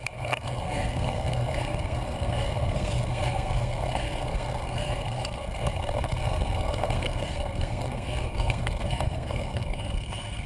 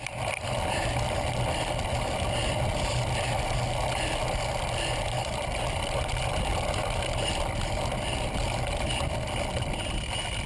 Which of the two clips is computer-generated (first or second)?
first